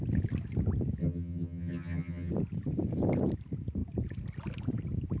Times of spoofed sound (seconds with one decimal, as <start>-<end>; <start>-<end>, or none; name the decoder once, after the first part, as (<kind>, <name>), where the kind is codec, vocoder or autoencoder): 1.0-2.3 (vocoder, HiFi-GAN)